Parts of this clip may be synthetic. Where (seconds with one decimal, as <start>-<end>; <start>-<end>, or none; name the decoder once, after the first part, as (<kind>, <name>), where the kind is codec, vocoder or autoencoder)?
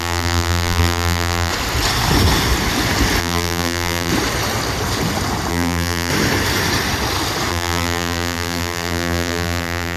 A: 0.0-1.5 (vocoder, BigVGAN v2); 3.2-4.1; 5.5-6.1; 7.5-10.0